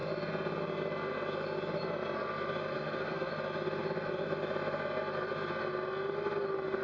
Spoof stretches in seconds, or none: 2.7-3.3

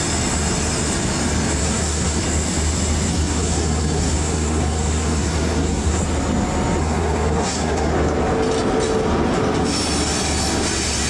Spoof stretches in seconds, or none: 1.6-2.2; 3.1-6.0; 6.8-7.9